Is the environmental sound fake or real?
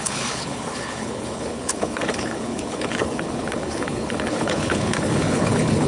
fake